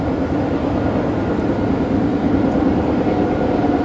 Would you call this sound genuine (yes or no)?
yes